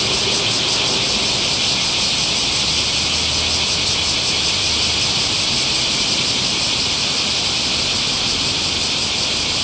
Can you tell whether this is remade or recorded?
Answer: recorded